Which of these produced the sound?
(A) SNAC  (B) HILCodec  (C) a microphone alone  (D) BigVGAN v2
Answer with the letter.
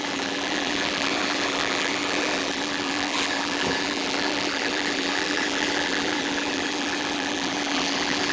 D